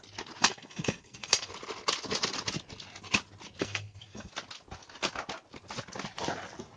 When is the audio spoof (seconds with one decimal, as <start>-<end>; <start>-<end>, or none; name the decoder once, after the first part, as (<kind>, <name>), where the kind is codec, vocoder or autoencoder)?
0.4-1.5 (codec, SNAC); 3.6-4.3